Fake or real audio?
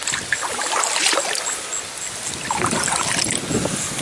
real